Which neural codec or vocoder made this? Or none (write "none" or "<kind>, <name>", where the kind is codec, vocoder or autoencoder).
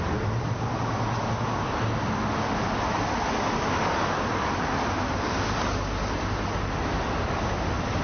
none